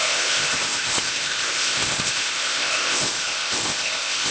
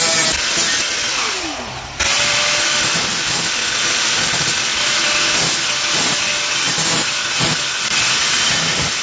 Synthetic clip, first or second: first